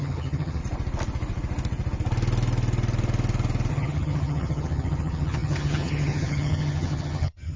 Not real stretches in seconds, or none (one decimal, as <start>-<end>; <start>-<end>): 0.0-0.6; 3.7-7.6